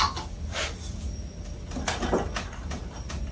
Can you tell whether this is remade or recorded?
recorded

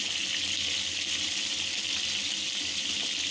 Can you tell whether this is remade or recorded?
recorded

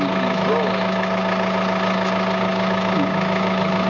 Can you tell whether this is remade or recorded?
recorded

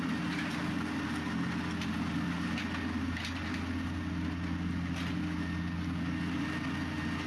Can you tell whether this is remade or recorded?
recorded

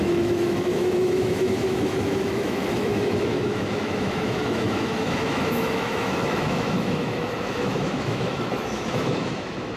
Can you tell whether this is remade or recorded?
remade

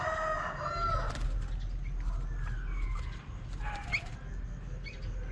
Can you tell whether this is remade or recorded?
recorded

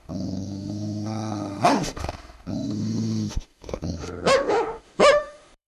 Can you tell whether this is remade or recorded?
remade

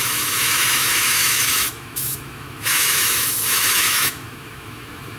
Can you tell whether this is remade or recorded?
remade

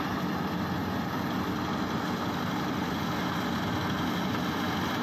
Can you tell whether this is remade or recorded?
recorded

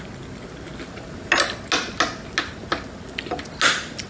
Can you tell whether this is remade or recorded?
recorded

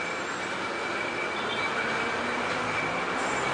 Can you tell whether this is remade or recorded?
recorded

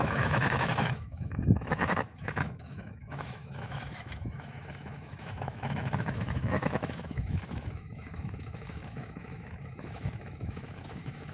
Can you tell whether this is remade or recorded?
remade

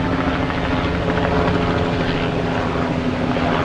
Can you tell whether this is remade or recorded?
recorded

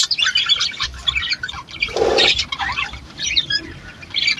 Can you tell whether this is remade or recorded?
recorded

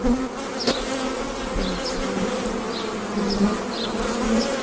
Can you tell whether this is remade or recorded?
recorded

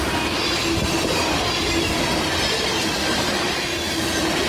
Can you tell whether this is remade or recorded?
recorded